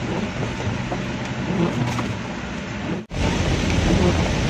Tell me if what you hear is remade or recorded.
recorded